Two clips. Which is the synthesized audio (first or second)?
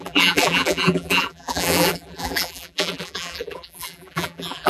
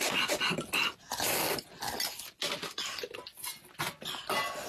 first